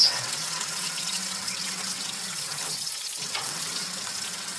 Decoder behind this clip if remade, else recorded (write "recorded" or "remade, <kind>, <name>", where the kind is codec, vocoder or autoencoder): remade, vocoder, WaveNeXt